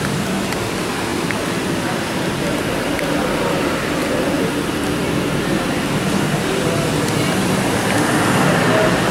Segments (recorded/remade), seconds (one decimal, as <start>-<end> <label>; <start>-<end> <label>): 0.0-1.1 remade; 1.1-1.7 recorded; 1.7-4.0 remade; 4.0-4.7 recorded; 4.7-9.1 remade